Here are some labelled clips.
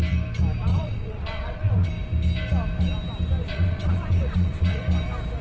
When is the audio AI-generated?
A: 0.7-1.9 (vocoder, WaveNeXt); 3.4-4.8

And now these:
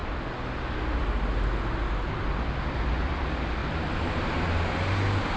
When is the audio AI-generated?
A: 3.6-4.3 (vocoder, BigVGAN v2)